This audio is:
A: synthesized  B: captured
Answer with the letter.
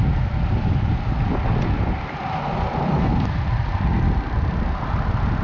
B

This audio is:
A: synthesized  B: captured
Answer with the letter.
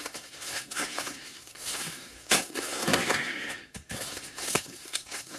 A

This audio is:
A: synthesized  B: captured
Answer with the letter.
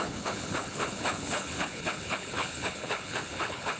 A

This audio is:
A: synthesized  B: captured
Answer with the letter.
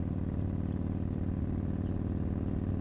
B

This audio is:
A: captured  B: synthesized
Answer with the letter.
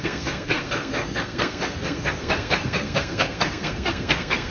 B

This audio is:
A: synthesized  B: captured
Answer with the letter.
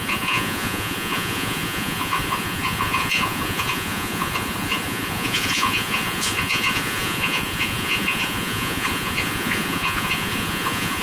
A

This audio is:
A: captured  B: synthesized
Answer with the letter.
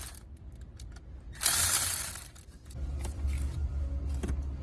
A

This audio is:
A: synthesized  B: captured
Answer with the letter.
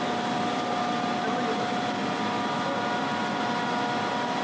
B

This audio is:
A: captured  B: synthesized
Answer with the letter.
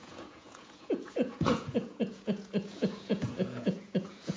B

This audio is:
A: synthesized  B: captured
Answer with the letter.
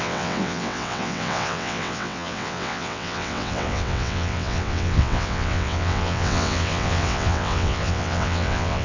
A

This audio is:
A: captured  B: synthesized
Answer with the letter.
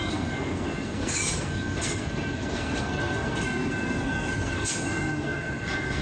B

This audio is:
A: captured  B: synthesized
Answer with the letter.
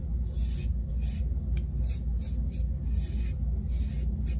A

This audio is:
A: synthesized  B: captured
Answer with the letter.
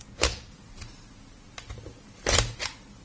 B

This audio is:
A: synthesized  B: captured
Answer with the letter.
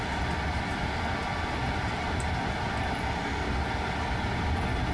B